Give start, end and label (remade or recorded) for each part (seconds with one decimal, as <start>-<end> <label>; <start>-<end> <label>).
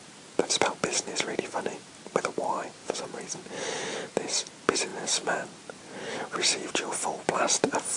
0.0-2.8 recorded; 2.8-3.4 remade; 3.4-8.0 recorded